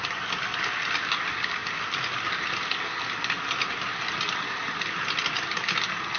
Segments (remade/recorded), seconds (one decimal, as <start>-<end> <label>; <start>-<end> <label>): 0.0-6.2 recorded